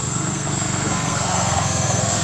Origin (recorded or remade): remade